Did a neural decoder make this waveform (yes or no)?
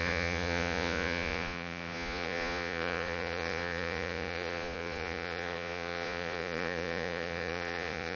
yes